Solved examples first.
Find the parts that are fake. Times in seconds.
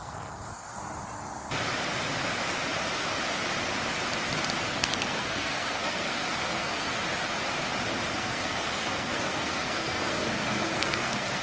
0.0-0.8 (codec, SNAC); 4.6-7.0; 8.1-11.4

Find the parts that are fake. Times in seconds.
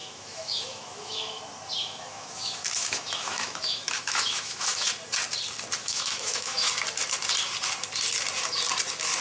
0.0-1.4 (autoencoder, DAC-VAE); 1.8-4.9; 5.8-6.7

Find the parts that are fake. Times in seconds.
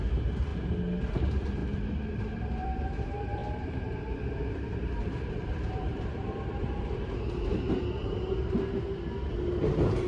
0.0-0.5 (vocoder, BigVGAN v2); 1.0-1.6; 2.1-10.1